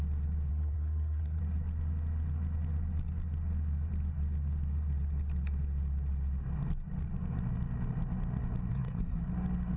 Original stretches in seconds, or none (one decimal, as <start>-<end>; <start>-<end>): 0.0-0.5; 1.4-8.7; 9.2-9.8